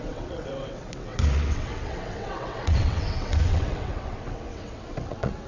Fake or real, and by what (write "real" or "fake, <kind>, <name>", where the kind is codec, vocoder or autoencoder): fake, vocoder, WaveNeXt